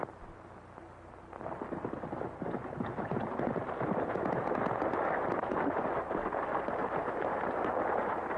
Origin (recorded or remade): recorded